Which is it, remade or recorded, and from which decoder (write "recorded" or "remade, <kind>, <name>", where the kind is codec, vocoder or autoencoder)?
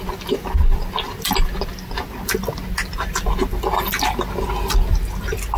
recorded